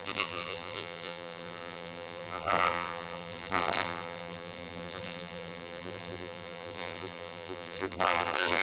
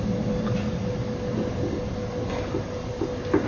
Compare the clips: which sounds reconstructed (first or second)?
first